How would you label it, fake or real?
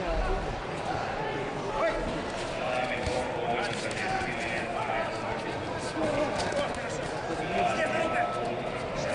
real